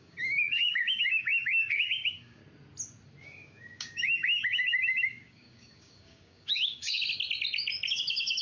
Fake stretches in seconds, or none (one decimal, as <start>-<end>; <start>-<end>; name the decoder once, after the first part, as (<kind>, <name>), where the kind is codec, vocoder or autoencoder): 0.0-2.4 (codec, DAC); 3.2-7.0; 7.9-8.4